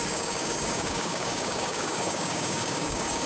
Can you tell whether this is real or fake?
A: fake